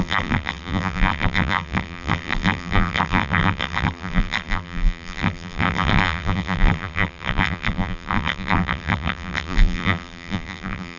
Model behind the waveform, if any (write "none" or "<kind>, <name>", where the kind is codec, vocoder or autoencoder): vocoder, BigVGAN v2